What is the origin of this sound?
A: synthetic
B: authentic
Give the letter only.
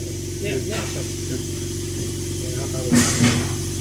B